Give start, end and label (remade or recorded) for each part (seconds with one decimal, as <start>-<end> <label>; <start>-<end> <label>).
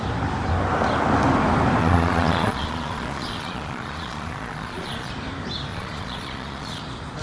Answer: 0.0-1.8 recorded; 1.8-5.1 remade; 5.1-5.7 recorded; 5.7-6.8 remade; 6.8-7.2 recorded